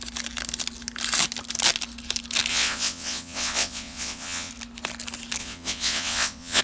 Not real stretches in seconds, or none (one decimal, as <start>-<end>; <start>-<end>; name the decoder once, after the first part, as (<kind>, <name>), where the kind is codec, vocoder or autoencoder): 2.5-4.5 (vocoder, WaveNeXt); 5.4-6.6